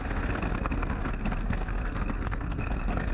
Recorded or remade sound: remade